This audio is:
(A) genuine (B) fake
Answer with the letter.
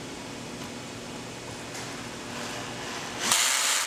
A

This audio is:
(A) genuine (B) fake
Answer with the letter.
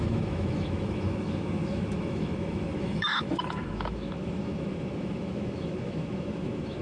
B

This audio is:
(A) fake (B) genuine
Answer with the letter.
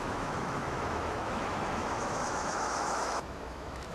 A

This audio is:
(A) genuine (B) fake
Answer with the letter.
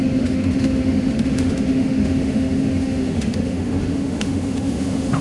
B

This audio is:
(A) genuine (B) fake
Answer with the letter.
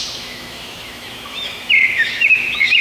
B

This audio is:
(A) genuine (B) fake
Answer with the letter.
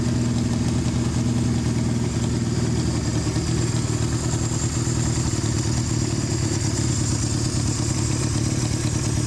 A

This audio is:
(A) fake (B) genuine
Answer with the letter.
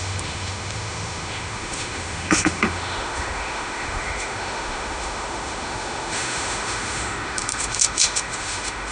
A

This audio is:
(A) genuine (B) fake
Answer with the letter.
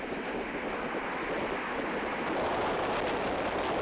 A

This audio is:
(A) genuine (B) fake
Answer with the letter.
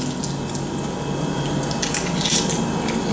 A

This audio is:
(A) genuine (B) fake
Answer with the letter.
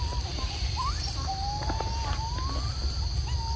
A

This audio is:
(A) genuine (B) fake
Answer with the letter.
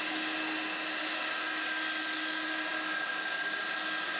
A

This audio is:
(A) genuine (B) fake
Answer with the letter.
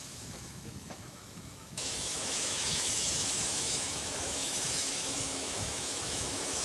B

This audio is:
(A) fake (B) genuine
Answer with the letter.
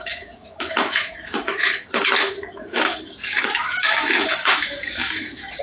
A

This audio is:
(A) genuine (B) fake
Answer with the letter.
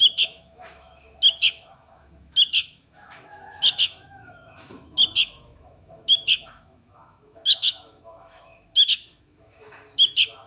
B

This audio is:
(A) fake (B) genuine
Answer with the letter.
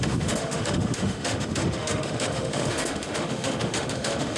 A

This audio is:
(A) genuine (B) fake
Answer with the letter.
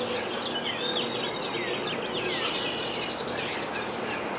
A